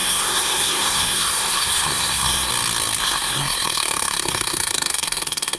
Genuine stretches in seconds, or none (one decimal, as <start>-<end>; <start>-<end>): 2.5-3.0